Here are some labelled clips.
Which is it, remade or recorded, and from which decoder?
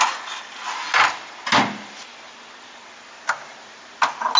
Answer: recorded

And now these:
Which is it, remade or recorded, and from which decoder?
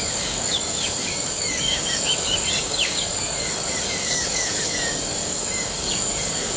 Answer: remade, codec, DAC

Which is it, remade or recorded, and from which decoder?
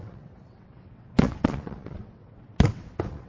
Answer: remade, vocoder, WaveNeXt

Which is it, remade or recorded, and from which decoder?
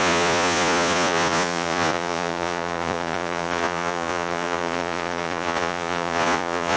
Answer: remade, vocoder, Vocos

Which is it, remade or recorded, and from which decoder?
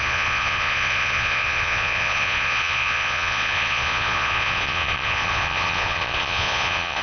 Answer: remade, vocoder, Vocos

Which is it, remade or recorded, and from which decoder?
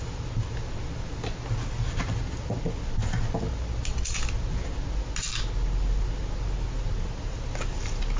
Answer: recorded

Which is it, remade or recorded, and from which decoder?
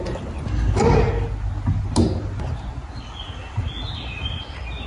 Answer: recorded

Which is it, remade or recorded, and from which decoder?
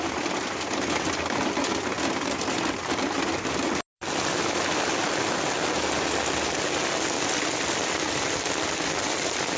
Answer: recorded